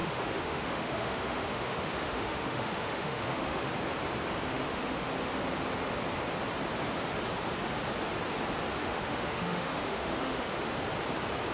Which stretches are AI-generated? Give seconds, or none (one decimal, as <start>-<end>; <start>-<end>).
0.0-3.7; 4.5-5.1; 8.8-10.7